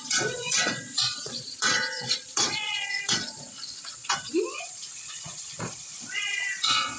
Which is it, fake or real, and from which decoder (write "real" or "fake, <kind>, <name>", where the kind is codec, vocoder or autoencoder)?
fake, vocoder, Vocos